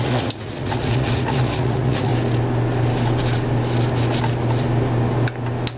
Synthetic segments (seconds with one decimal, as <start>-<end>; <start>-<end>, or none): 0.0-2.1